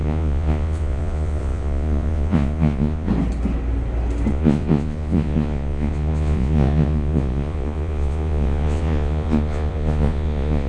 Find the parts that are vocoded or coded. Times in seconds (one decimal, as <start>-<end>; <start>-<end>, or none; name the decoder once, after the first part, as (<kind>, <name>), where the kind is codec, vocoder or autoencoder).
0.0-3.1 (vocoder, Vocos); 4.3-10.7